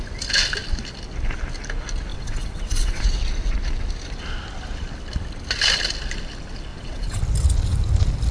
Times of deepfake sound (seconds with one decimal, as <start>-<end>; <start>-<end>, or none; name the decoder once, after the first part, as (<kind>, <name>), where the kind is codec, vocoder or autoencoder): 2.1-3.0 (vocoder, WaveNeXt); 6.7-7.2